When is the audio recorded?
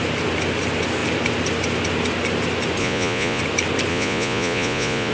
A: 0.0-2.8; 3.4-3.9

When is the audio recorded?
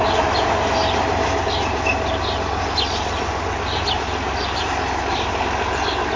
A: 0.0-6.2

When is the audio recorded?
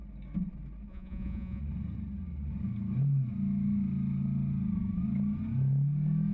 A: 0.0-0.9; 1.6-6.3